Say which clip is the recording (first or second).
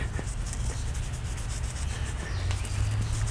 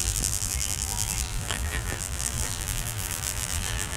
first